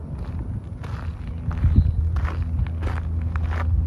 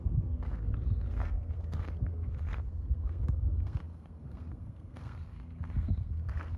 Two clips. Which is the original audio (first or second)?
first